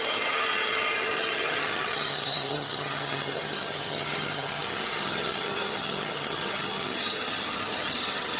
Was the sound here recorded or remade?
remade